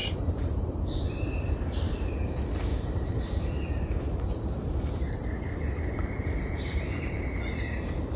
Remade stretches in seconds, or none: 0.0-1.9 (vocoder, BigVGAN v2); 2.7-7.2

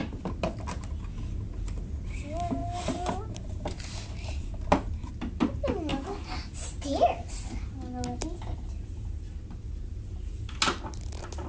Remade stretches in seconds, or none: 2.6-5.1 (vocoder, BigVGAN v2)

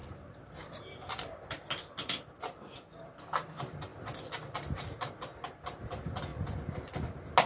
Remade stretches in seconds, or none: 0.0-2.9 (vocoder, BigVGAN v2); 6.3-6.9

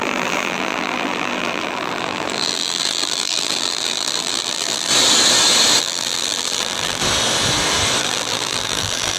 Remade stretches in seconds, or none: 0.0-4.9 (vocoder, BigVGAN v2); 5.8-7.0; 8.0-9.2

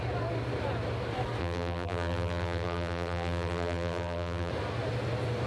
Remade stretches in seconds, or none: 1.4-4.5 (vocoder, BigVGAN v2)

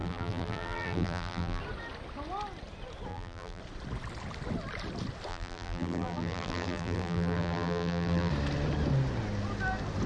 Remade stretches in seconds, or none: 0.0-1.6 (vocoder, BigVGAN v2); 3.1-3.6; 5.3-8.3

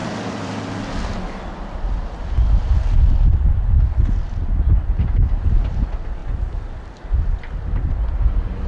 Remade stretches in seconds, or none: 0.0-0.5 (vocoder, BigVGAN v2); 6.2-8.7